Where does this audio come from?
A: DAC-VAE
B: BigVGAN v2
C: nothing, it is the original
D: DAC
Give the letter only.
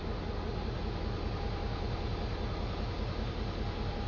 C